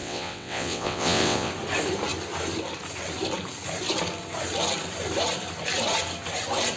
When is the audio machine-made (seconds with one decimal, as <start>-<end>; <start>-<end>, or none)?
0.0-1.5